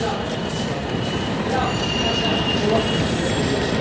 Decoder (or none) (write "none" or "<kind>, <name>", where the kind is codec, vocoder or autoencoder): vocoder, BigVGAN v2